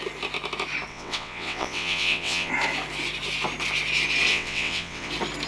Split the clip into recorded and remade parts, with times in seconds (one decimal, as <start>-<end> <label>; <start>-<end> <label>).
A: 0.0-0.9 recorded; 0.9-2.5 remade; 2.5-4.3 recorded; 4.3-5.1 remade; 5.1-5.5 recorded